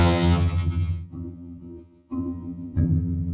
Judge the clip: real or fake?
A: fake